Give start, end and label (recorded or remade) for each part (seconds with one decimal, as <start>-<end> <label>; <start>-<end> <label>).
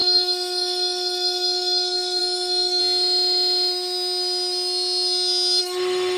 0.0-2.8 remade; 2.8-5.6 recorded; 5.6-6.2 remade